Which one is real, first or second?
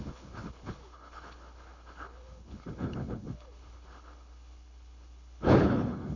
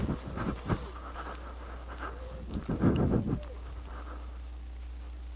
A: second